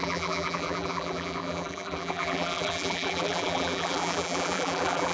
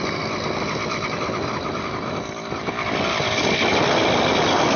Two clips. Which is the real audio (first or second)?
second